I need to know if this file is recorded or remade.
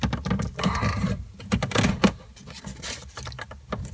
recorded